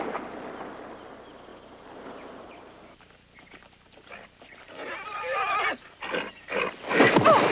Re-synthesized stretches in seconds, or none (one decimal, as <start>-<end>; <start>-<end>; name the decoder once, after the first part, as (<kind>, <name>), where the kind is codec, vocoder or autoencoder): 1.5-6.0 (vocoder, BigVGAN v2)